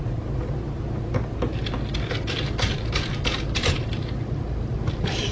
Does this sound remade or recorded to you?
recorded